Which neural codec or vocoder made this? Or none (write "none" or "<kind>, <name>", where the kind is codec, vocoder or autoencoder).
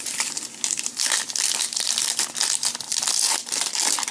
none